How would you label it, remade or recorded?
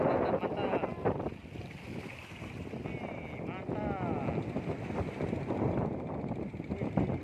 recorded